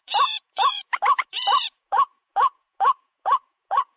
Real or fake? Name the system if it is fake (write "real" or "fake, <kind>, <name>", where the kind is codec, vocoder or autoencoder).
fake, vocoder, Vocos